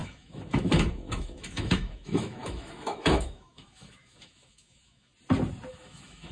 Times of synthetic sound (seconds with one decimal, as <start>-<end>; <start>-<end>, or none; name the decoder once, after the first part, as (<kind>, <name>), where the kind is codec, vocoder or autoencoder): 0.0-5.1 (autoencoder, DAC-VAE); 5.7-6.3